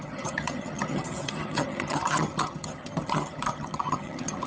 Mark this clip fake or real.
fake